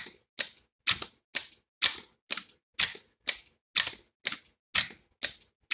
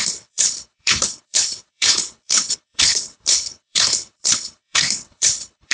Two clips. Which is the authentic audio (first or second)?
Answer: first